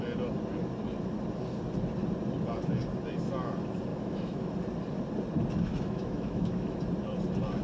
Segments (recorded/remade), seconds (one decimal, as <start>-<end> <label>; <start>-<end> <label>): 0.0-3.9 recorded; 3.9-4.5 remade; 4.5-5.7 recorded; 5.7-6.8 remade; 6.8-7.6 recorded